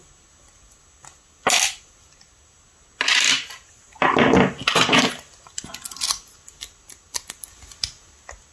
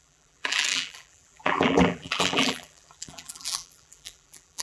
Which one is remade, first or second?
second